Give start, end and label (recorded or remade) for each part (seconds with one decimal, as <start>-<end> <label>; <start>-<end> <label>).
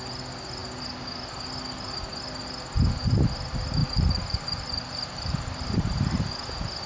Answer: 0.0-3.8 recorded; 3.8-6.2 remade; 6.2-6.9 recorded